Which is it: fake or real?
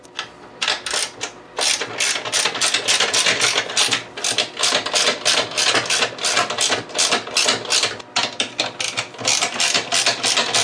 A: real